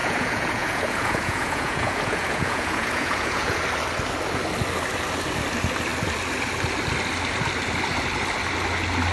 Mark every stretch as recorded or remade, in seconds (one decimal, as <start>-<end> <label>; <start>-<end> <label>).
0.0-3.6 remade; 3.6-9.1 recorded